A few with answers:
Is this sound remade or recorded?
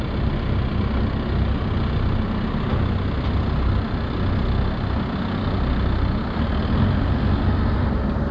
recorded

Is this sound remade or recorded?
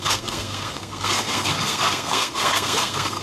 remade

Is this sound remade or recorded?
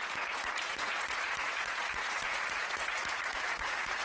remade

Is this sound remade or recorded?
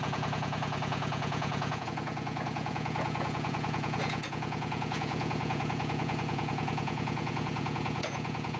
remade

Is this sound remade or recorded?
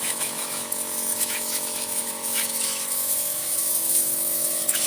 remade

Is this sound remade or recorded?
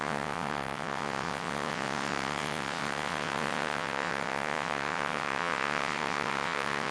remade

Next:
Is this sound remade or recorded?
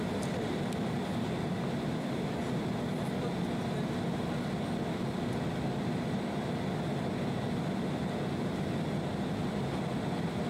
recorded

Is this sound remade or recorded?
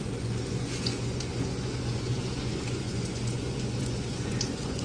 remade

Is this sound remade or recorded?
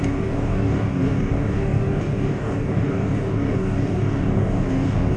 remade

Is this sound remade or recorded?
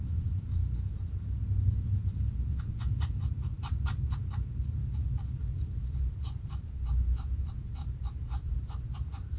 remade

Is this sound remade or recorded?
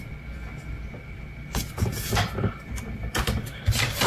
recorded